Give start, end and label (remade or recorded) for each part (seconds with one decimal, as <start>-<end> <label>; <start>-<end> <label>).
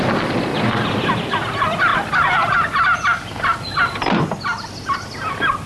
0.0-0.5 recorded; 0.5-1.3 remade; 1.3-1.9 recorded; 1.9-3.0 remade; 3.0-5.7 recorded